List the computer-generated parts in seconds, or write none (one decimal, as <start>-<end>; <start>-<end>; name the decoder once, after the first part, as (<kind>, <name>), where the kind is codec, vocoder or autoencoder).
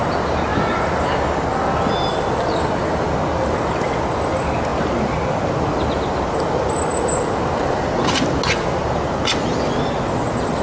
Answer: none